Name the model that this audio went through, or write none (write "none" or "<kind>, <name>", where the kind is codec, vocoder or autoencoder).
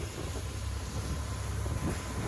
none